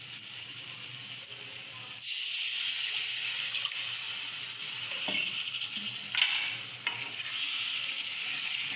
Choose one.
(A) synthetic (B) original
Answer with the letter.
B